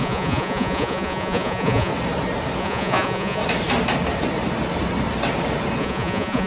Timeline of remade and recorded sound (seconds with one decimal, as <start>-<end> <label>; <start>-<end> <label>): 0.0-1.9 remade; 1.9-2.6 recorded; 2.6-3.4 remade; 3.4-5.8 recorded; 5.8-6.5 remade